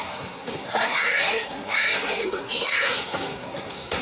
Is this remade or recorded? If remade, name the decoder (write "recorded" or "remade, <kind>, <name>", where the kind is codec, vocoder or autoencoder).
remade, codec, SNAC